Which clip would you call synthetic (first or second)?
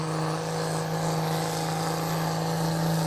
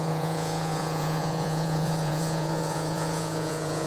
second